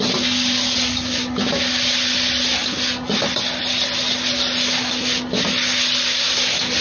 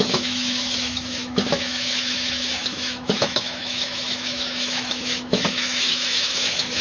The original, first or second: first